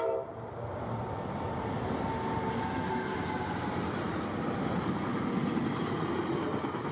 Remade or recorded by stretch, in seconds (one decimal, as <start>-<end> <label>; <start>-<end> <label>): 0.0-6.9 recorded